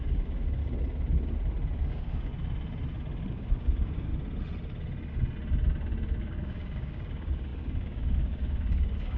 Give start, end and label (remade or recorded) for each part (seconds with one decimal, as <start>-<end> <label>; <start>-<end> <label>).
0.0-0.6 remade; 0.6-1.9 recorded; 1.9-2.3 remade; 2.3-3.3 recorded; 3.3-4.1 remade; 4.1-6.2 recorded; 6.2-9.2 remade